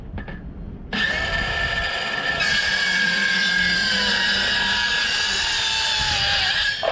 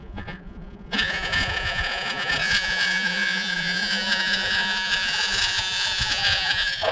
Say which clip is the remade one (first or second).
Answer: second